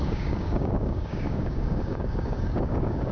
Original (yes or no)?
no